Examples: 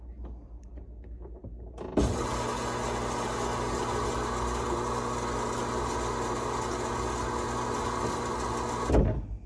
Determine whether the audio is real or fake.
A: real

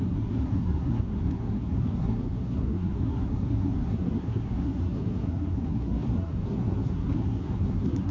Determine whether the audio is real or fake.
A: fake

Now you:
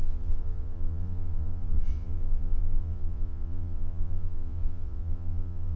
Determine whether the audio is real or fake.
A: fake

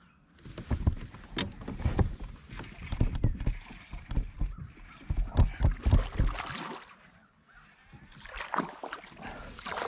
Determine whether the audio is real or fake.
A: real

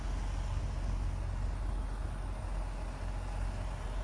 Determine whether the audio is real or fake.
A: real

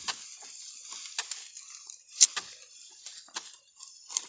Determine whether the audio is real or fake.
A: real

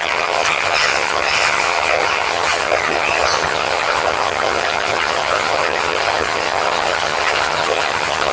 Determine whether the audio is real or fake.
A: fake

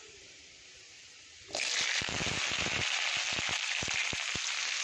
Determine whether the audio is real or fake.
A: real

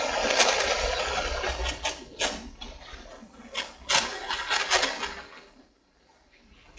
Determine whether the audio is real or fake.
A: real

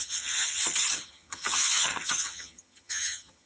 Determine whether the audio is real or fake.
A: fake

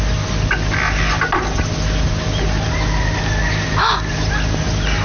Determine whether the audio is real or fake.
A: real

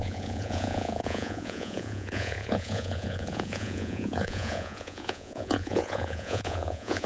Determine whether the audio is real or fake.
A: fake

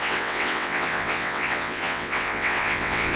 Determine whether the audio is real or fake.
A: fake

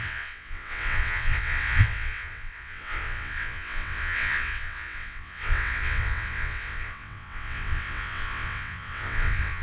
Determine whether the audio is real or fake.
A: fake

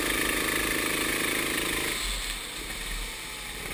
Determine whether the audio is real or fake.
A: real